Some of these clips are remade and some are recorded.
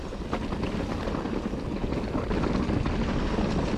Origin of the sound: recorded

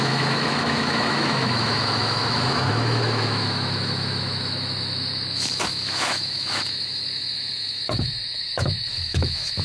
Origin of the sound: remade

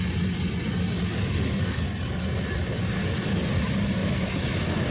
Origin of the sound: recorded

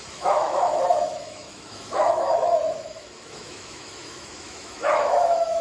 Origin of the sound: remade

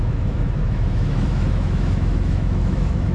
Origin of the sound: remade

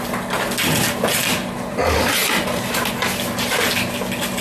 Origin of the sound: recorded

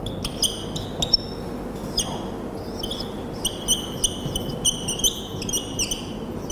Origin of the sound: recorded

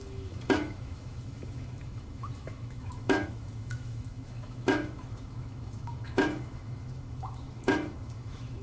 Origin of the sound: remade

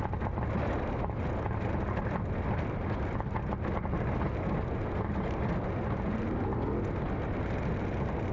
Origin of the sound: recorded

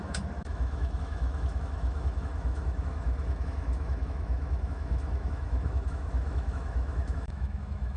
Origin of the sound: remade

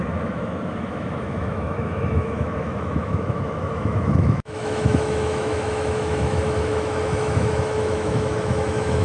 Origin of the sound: remade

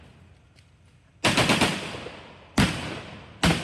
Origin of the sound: recorded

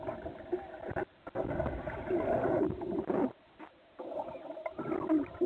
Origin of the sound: recorded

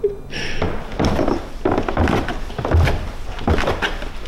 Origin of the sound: recorded